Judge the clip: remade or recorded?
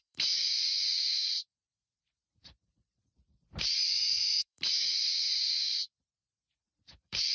remade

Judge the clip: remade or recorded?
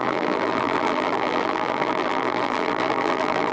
remade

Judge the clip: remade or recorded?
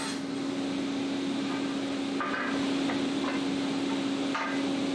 recorded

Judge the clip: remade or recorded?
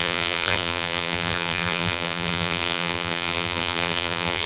remade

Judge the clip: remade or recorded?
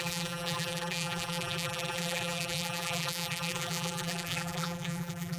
remade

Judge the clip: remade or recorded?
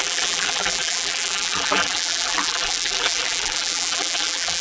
remade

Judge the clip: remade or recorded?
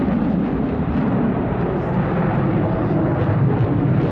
remade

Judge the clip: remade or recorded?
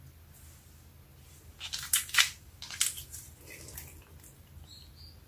recorded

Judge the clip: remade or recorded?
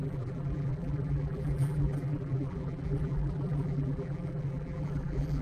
remade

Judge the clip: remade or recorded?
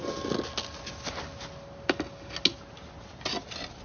recorded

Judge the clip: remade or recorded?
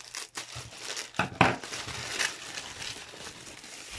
remade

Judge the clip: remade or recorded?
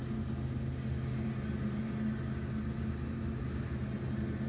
recorded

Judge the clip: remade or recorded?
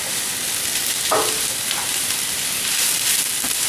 remade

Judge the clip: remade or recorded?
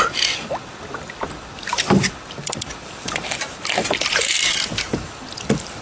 recorded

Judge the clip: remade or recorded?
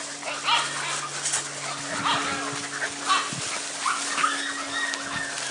recorded